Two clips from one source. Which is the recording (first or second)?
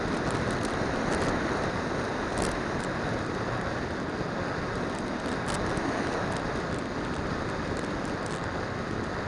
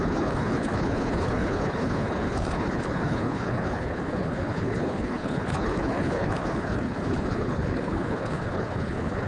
first